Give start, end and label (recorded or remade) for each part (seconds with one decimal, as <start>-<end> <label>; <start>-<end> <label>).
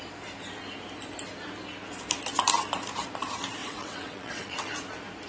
0.0-3.6 recorded; 3.6-4.7 remade; 4.7-5.3 recorded